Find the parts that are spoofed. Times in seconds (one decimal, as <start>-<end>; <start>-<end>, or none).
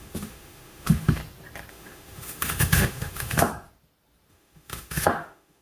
0.0-1.2; 1.7-3.5; 4.3-5.6